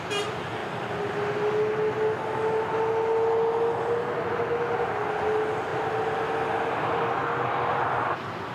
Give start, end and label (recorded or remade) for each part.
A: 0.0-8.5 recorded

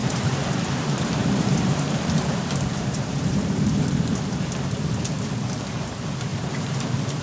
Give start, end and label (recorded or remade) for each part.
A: 0.0-4.2 remade; 4.2-6.3 recorded; 6.3-6.8 remade; 6.8-7.2 recorded

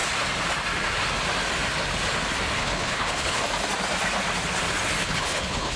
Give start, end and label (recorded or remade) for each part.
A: 0.0-2.6 recorded; 2.6-3.4 remade; 3.4-5.0 recorded; 5.0-5.8 remade

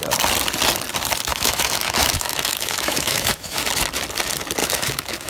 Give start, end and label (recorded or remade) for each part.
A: 0.0-1.3 recorded; 1.3-3.7 remade; 3.7-4.6 recorded; 4.6-5.3 remade

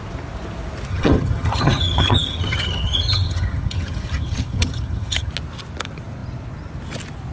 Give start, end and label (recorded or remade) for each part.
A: 0.0-0.9 recorded; 0.9-5.3 remade; 5.3-7.3 recorded